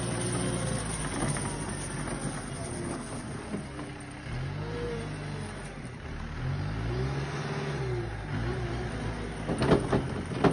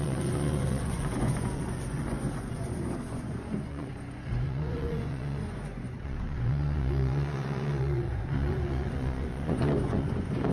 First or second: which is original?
first